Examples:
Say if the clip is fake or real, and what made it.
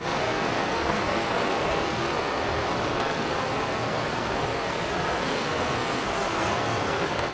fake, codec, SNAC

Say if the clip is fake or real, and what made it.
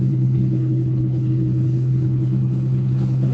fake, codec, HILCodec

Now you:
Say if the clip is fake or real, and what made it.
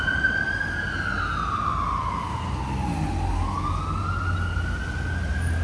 real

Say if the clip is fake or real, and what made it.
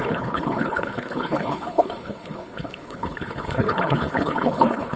fake, codec, HILCodec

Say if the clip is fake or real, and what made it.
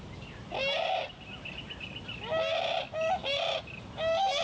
real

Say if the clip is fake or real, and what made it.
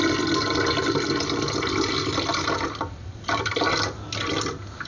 real